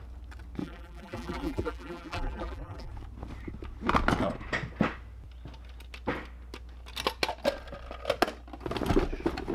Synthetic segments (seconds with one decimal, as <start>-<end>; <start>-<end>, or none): 0.6-2.9